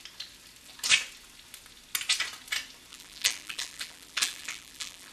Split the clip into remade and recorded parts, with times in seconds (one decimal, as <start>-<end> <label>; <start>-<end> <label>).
0.0-2.9 recorded; 2.9-5.1 remade